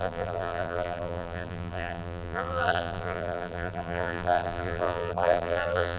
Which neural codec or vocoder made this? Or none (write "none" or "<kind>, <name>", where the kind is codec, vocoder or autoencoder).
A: vocoder, BigVGAN v2